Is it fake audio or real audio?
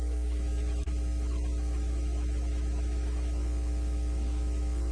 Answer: fake